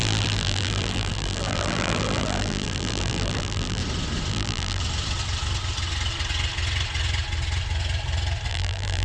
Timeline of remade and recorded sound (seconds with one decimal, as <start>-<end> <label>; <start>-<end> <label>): 0.0-3.8 remade; 3.8-4.3 recorded; 4.3-4.8 remade; 4.8-8.5 recorded; 8.5-9.0 remade